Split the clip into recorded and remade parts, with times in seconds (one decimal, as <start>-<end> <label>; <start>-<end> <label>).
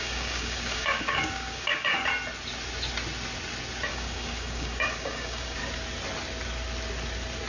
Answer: 0.0-2.1 remade; 2.1-3.9 recorded; 3.9-5.6 remade; 5.6-7.5 recorded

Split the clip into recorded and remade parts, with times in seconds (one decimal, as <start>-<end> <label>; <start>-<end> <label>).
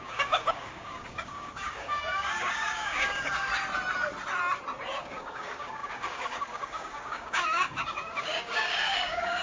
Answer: 0.0-3.5 remade; 3.5-5.0 recorded; 5.0-9.4 remade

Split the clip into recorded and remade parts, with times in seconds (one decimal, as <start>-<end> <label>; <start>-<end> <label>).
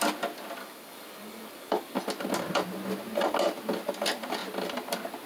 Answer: 0.0-0.6 recorded; 0.6-2.0 remade; 2.0-5.3 recorded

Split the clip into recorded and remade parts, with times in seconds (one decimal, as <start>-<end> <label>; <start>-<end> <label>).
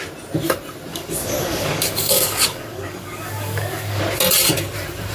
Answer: 0.0-0.9 recorded; 0.9-4.0 remade; 4.0-5.1 recorded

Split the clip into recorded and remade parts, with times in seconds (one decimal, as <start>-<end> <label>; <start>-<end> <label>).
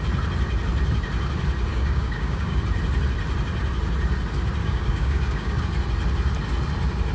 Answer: 0.0-1.7 recorded; 1.7-2.6 remade; 2.6-4.6 recorded; 4.6-5.6 remade; 5.6-7.1 recorded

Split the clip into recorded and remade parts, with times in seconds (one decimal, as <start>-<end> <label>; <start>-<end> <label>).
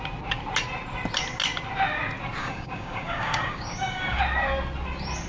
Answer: 0.0-2.4 recorded; 2.4-4.2 remade; 4.2-5.3 recorded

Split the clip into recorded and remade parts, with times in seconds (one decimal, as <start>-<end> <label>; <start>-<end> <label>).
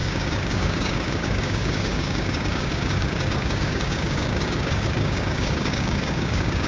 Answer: 0.0-6.7 remade